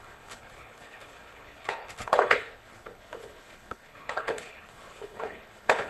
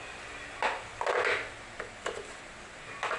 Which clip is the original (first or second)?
second